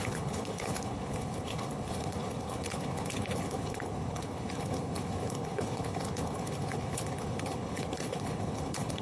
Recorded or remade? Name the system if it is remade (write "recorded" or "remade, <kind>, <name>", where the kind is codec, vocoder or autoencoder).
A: remade, codec, HILCodec